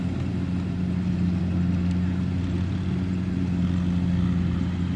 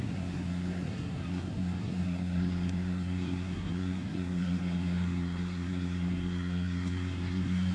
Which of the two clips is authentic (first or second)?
first